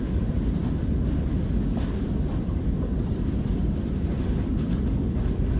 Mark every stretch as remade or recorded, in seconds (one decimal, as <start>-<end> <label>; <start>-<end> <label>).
0.0-5.6 recorded